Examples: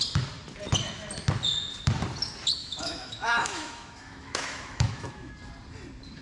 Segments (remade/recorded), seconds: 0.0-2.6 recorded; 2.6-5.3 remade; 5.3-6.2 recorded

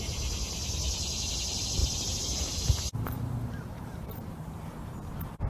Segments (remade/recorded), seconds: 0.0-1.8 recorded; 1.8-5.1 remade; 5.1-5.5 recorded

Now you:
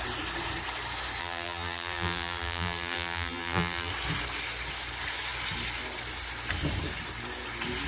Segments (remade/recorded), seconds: 0.0-1.2 recorded; 1.2-3.9 remade; 3.9-7.9 recorded

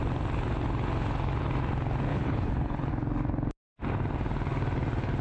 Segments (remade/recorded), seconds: 0.0-2.1 recorded; 2.1-2.9 remade; 2.9-5.2 recorded

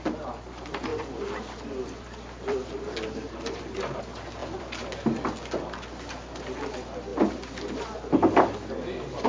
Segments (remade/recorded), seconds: 0.0-0.9 recorded; 0.9-4.0 remade; 4.0-4.4 recorded; 4.4-5.3 remade; 5.3-9.3 recorded

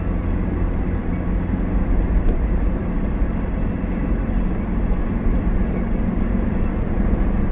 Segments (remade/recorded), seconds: 0.0-7.5 recorded